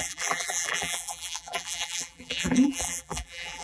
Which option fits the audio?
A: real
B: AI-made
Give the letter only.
B